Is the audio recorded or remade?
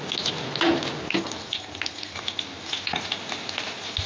recorded